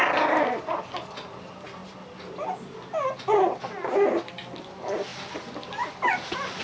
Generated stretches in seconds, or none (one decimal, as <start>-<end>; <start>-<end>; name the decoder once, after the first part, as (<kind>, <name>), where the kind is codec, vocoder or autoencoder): none